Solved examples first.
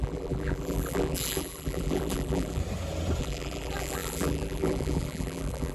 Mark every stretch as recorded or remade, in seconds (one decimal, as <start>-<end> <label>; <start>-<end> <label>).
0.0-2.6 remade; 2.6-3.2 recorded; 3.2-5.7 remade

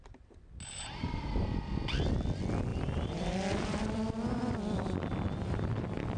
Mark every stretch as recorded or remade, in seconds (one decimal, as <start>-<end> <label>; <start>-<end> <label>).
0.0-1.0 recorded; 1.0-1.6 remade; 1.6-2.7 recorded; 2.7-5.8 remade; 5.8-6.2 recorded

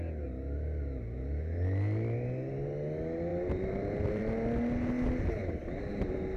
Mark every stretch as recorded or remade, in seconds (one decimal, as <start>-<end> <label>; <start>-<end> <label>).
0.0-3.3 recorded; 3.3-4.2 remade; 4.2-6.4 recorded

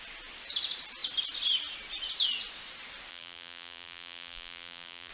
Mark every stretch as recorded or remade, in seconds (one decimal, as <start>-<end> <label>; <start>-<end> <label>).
0.0-3.1 recorded; 3.1-5.1 remade

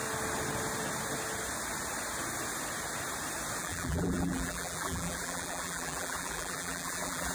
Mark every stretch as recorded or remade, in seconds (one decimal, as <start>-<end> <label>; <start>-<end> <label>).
0.0-3.6 recorded; 3.6-7.3 remade